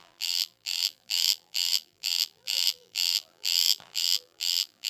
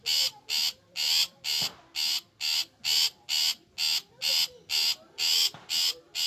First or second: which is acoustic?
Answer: second